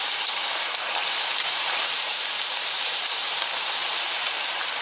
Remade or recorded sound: remade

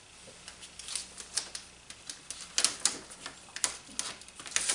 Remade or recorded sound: recorded